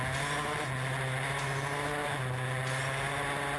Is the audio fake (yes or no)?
no